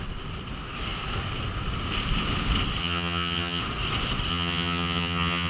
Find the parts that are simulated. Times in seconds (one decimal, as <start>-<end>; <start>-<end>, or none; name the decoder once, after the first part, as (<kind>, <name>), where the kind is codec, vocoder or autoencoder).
2.8-3.6 (vocoder, HiFi-GAN); 4.3-5.5